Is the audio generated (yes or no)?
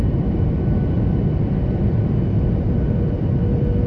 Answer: yes